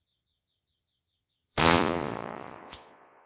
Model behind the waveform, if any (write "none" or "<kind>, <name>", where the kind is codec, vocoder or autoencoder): vocoder, Vocos